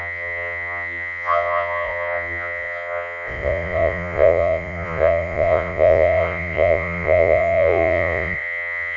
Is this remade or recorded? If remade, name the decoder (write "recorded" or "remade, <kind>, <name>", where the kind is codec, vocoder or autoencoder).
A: remade, vocoder, Vocos